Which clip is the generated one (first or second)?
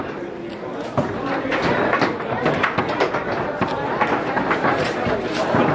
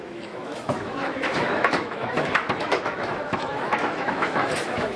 second